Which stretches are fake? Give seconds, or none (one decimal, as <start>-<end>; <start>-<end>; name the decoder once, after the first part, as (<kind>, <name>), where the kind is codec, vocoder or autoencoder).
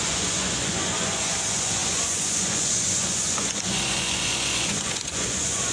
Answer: 0.0-5.7 (vocoder, Vocos)